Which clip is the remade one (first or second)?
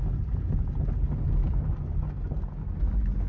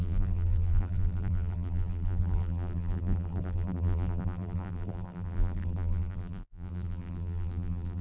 second